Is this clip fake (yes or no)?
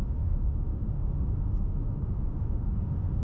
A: yes